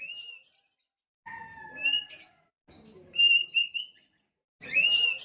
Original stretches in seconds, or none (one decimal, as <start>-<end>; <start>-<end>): 0.0-5.2